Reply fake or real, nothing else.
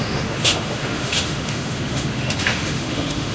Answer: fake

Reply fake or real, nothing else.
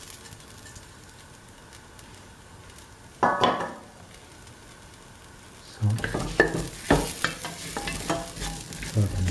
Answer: real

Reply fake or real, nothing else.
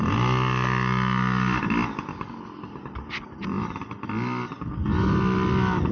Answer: real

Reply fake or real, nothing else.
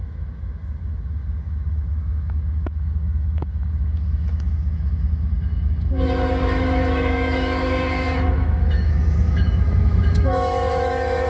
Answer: fake